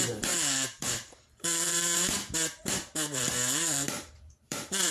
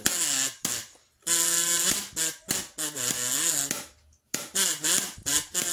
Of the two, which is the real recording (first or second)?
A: second